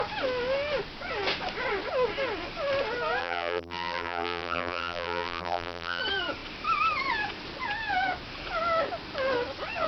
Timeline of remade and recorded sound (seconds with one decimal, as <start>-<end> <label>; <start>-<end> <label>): 0.0-3.2 recorded; 3.2-6.0 remade; 6.0-9.9 recorded